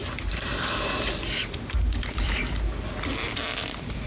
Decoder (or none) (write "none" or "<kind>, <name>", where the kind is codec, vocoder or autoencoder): none